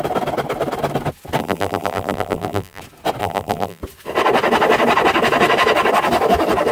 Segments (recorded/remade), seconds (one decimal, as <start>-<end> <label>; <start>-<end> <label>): 0.0-1.4 recorded; 1.4-2.8 remade; 2.8-3.2 recorded; 3.2-3.8 remade; 3.8-6.7 recorded